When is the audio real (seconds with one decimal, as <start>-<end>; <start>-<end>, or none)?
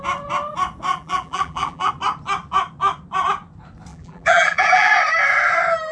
0.0-0.9; 1.9-3.9; 4.9-5.9